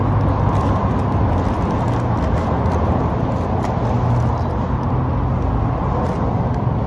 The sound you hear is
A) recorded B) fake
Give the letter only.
A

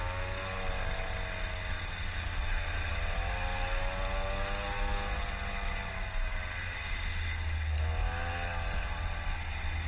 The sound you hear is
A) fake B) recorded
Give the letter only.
B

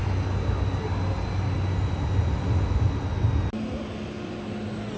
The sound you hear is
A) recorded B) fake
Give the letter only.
A